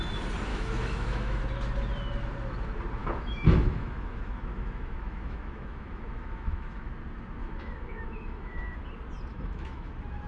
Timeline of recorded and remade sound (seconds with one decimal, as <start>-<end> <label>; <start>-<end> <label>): 0.0-0.5 recorded; 0.5-1.4 remade; 1.4-3.0 recorded; 3.0-6.9 remade; 6.9-7.4 recorded; 7.4-8.9 remade; 8.9-9.3 recorded; 9.3-9.9 remade; 9.9-10.3 recorded